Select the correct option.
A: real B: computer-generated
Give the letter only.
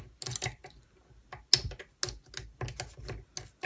A